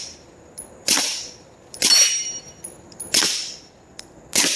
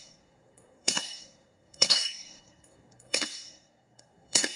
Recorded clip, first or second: first